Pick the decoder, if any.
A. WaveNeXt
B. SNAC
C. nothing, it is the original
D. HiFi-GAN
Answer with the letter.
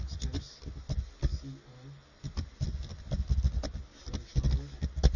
C